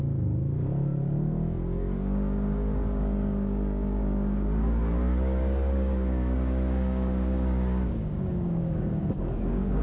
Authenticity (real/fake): fake